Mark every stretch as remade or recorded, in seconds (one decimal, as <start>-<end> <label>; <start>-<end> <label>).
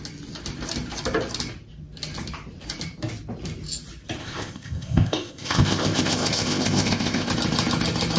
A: 0.0-4.2 recorded; 4.2-7.3 remade; 7.3-8.2 recorded